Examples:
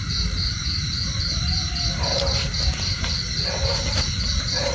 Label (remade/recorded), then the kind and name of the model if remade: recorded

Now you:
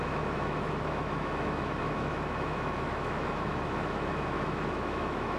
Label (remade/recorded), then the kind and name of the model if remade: remade, autoencoder, DAC-VAE